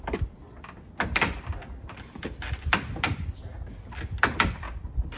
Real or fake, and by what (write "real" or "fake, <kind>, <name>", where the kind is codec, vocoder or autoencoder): real